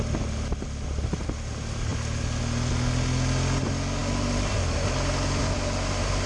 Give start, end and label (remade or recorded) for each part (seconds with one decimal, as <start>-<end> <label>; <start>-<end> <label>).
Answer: 0.0-6.3 recorded